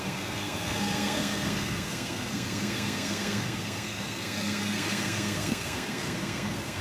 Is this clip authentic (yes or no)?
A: no